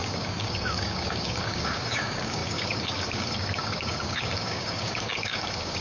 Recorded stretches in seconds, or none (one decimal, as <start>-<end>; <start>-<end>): none